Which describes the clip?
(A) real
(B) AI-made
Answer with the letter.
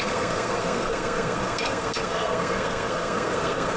B